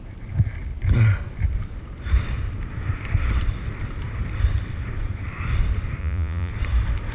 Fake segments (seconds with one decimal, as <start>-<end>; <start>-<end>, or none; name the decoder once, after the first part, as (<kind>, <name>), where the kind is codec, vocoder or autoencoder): 6.0-6.5 (vocoder, Vocos)